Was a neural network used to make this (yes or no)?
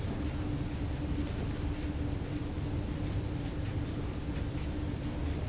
no